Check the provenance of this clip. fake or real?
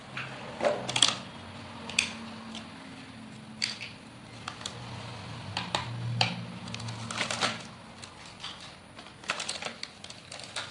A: real